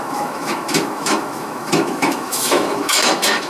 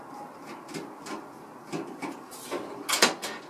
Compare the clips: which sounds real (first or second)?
second